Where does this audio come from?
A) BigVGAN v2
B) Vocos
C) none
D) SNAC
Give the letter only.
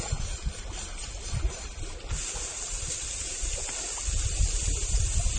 C